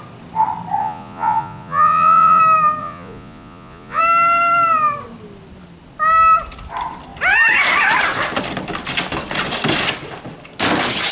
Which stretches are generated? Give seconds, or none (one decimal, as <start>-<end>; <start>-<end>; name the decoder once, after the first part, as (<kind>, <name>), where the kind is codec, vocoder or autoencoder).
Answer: 0.8-2.4 (vocoder, Vocos); 2.8-4.0